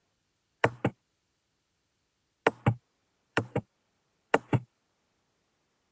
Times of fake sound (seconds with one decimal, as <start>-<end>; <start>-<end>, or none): 0.0-2.1; 3.0-4.9